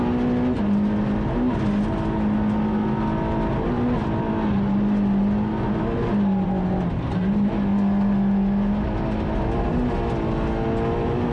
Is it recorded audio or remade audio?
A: recorded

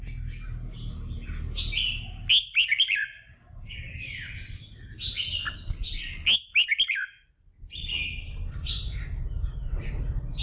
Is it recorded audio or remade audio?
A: recorded